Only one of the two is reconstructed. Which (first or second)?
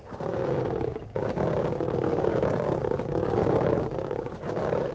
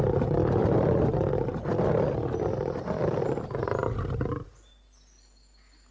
first